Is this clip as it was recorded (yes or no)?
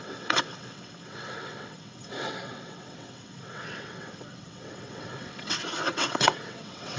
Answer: no